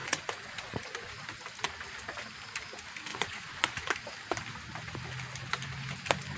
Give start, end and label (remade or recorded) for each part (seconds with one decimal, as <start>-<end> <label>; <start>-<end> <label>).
0.0-1.1 remade; 1.1-3.1 recorded; 3.1-3.9 remade; 3.9-6.4 recorded